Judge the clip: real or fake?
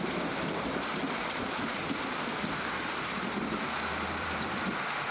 fake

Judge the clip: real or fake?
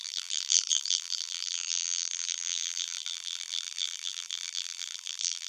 fake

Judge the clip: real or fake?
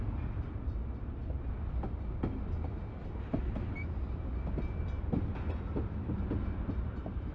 real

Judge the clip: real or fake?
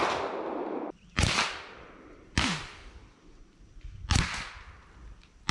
real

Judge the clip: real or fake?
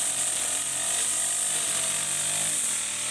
real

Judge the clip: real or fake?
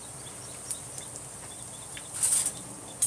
real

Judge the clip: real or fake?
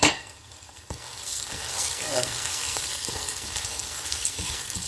fake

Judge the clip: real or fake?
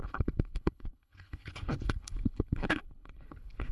fake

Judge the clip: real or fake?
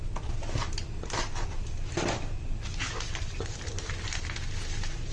real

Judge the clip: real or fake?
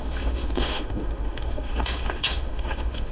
fake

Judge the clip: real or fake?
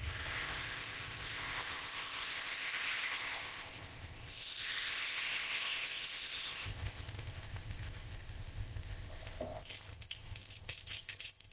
fake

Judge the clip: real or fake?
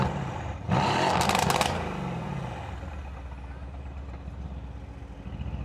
real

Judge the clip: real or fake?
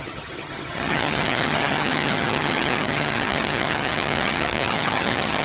fake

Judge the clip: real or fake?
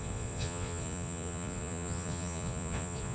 fake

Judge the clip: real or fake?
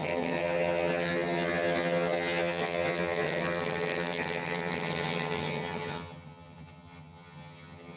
fake